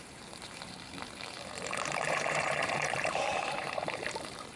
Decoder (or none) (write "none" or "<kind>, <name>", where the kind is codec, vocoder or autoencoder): vocoder, BigVGAN v2